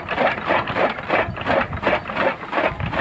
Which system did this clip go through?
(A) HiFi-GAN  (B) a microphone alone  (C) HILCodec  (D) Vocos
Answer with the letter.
B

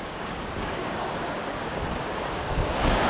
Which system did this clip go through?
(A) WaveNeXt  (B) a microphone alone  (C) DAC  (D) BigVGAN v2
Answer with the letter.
C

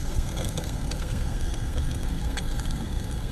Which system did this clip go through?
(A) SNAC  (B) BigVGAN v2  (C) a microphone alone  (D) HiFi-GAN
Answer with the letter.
A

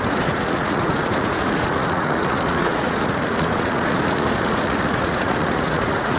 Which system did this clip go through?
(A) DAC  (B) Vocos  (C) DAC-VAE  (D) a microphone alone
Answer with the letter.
B